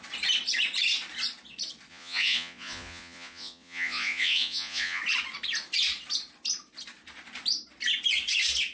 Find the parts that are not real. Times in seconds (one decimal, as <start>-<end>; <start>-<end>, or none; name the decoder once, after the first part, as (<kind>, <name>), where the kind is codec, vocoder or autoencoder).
1.9-5.0 (vocoder, Vocos)